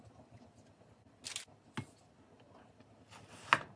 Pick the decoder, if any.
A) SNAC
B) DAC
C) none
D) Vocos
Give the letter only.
C